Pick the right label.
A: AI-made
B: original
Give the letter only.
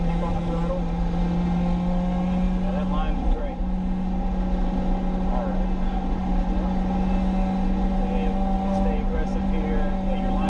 B